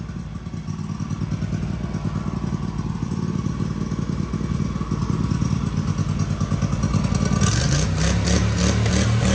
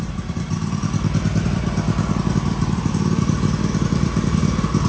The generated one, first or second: second